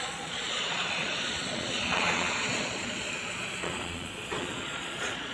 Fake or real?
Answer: fake